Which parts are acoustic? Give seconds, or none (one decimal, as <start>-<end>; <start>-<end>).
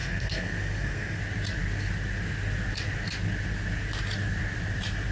1.2-5.1